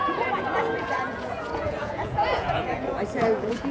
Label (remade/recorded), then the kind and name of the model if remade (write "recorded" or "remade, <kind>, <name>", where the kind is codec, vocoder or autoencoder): remade, vocoder, Vocos